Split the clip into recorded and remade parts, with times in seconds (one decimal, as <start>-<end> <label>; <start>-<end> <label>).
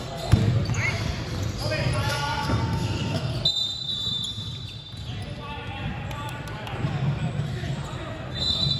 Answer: 0.0-0.4 remade; 0.4-2.1 recorded; 2.1-3.3 remade; 3.3-8.4 recorded; 8.4-8.8 remade